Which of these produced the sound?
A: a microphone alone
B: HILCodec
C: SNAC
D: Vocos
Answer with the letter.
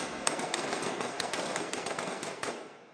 C